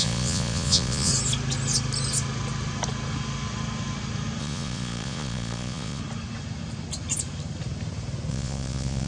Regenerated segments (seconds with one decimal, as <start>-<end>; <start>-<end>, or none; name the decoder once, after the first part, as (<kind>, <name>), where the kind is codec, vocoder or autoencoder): 0.0-1.1 (vocoder, Vocos); 4.4-6.0; 8.3-9.1